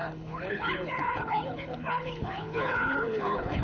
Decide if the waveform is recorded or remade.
remade